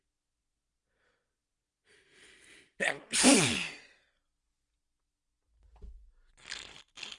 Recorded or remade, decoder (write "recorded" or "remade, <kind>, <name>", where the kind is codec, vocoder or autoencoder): recorded